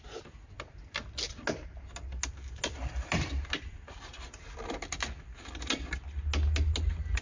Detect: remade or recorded recorded